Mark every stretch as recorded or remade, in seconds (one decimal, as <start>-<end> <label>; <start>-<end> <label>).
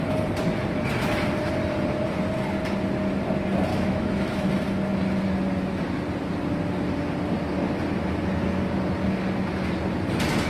0.0-3.7 recorded; 3.7-4.5 remade; 4.5-10.5 recorded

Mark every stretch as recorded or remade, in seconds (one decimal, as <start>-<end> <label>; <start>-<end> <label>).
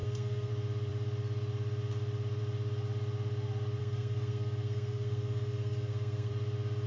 0.0-0.5 remade; 0.5-3.8 recorded; 3.8-6.3 remade; 6.3-6.9 recorded